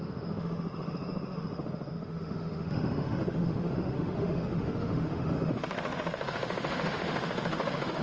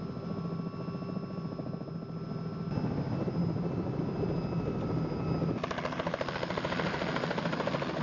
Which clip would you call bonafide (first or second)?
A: second